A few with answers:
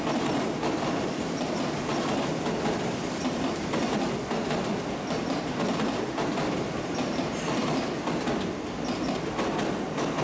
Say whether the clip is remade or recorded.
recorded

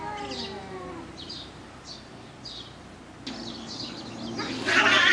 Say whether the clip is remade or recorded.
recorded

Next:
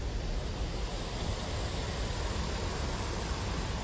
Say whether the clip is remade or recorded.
recorded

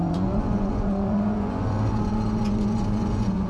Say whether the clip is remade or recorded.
remade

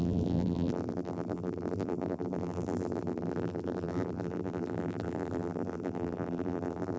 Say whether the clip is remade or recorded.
remade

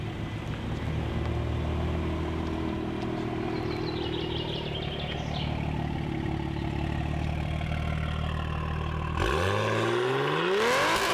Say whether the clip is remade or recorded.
recorded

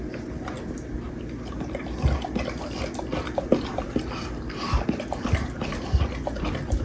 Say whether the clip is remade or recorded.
recorded